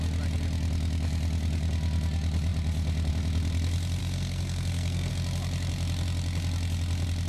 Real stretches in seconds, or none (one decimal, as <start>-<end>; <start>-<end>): 0.0-4.0; 5.1-7.3